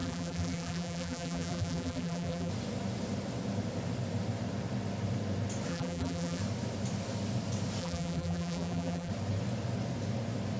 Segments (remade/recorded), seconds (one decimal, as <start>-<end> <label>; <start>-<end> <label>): 0.0-2.5 remade; 2.5-5.7 recorded; 5.7-6.4 remade; 6.4-7.8 recorded; 7.8-9.1 remade; 9.1-10.6 recorded

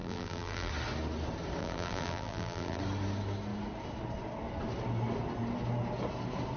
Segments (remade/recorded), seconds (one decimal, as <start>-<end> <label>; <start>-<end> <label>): 0.0-0.7 remade; 0.7-1.6 recorded; 1.6-2.8 remade; 2.8-6.6 recorded

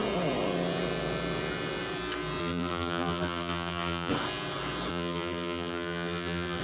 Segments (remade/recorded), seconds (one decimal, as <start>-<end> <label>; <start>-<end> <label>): 0.0-2.4 recorded; 2.4-4.1 remade; 4.1-4.9 recorded; 4.9-6.6 remade

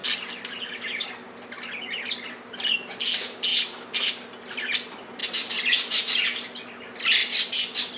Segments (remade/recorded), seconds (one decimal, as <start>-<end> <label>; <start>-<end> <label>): 0.0-3.5 recorded; 3.5-4.6 remade; 4.6-5.2 recorded; 5.2-6.0 remade; 6.0-7.2 recorded; 7.2-8.0 remade

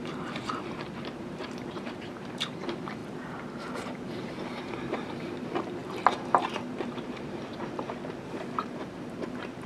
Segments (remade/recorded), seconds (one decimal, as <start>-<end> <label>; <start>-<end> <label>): 0.0-3.0 remade; 3.0-3.6 recorded; 3.6-9.7 remade

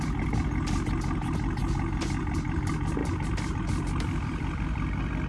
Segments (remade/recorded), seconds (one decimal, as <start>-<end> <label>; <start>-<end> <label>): 0.0-5.3 recorded

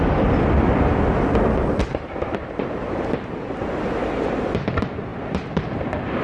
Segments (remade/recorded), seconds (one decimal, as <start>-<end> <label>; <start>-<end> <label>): 0.0-6.2 recorded